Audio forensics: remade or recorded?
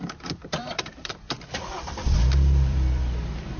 remade